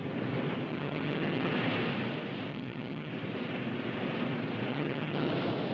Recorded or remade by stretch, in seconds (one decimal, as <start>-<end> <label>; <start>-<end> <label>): 0.0-0.7 recorded; 0.7-1.5 remade; 1.5-2.5 recorded; 2.5-3.1 remade; 3.1-4.7 recorded; 4.7-5.3 remade; 5.3-5.7 recorded